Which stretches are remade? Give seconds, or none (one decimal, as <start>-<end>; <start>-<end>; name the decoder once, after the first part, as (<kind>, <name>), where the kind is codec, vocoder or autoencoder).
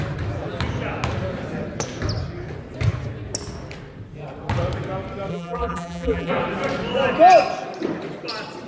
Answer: 5.3-6.3 (vocoder, BigVGAN v2)